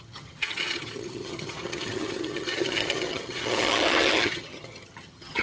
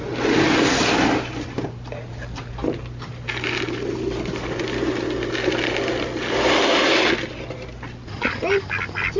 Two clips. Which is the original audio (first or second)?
second